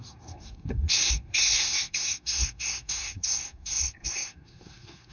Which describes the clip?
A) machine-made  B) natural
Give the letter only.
A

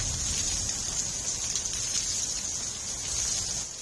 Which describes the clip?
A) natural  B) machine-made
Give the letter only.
A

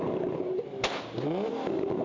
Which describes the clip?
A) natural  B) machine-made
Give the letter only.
A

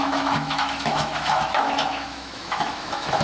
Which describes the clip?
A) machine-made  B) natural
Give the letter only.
A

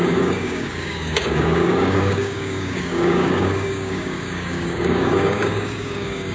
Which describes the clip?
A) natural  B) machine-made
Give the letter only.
B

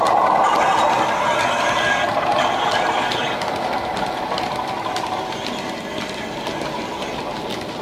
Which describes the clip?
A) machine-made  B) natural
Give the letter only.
B